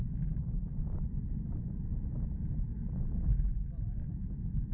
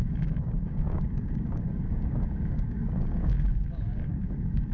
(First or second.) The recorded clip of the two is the first